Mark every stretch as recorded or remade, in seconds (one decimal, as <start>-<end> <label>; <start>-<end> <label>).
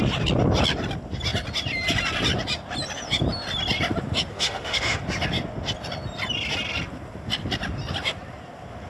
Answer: 0.0-4.3 recorded; 4.3-5.0 remade; 5.0-8.9 recorded